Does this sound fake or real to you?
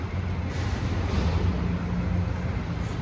real